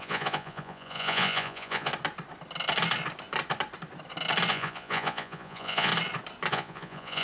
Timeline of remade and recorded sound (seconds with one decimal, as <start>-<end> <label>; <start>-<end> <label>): 0.0-1.9 remade; 1.9-4.5 recorded; 4.5-5.9 remade; 5.9-6.5 recorded; 6.5-7.2 remade